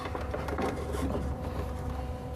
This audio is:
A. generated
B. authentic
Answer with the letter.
A